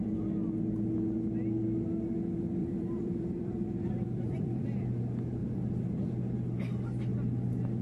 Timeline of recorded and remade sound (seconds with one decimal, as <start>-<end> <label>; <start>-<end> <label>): 0.0-2.6 recorded; 2.6-5.0 remade; 5.0-5.4 recorded; 5.4-6.2 remade; 6.2-7.8 recorded